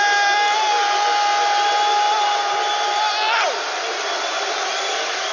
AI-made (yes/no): no